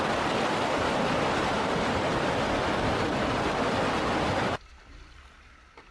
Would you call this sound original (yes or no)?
yes